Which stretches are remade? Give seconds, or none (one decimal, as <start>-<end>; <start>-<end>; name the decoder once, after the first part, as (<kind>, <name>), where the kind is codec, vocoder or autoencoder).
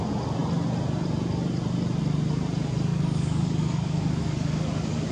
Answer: 2.9-5.1 (codec, DAC)